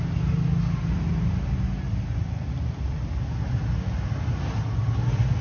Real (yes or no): yes